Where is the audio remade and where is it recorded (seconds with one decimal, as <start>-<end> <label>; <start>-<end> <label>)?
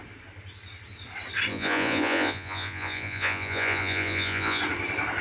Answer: 0.0-1.5 recorded; 1.5-4.6 remade; 4.6-5.2 recorded